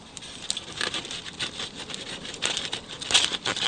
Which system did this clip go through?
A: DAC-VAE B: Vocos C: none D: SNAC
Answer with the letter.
C